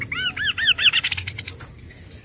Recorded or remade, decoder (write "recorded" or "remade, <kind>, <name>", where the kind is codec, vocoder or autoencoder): recorded